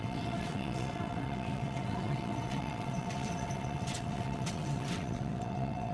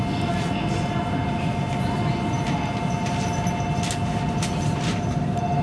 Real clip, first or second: second